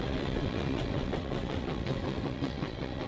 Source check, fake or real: fake